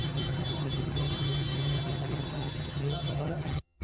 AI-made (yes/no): yes